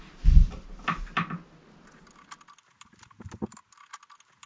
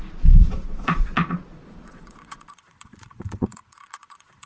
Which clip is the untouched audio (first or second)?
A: first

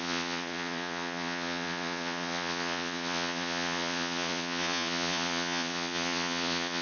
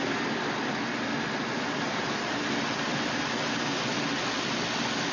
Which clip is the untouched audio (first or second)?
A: second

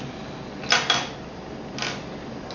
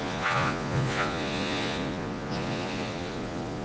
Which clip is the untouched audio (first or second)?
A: first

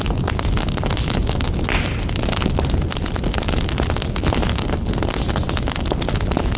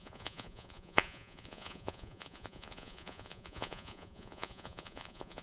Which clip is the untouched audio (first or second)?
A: first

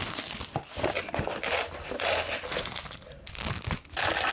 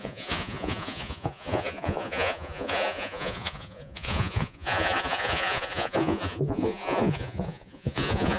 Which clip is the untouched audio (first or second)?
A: first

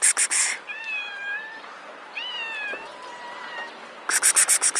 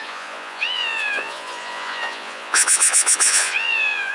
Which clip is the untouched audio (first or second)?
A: first